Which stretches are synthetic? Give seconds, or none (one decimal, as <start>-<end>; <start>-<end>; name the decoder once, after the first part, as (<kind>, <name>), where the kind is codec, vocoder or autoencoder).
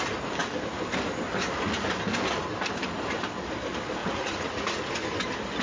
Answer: 4.0-4.8 (vocoder, Vocos)